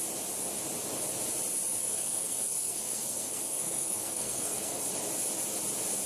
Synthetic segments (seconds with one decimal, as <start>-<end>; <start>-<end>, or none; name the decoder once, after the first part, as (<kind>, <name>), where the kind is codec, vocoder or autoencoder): 1.8-4.8 (codec, SNAC)